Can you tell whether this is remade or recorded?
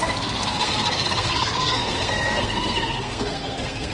remade